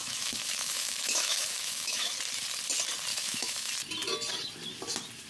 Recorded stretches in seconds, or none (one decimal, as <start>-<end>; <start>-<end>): 2.1-3.1; 3.7-5.3